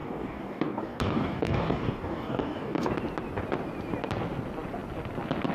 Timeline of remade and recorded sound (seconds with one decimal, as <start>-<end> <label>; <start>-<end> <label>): 0.0-2.9 remade; 2.9-5.5 recorded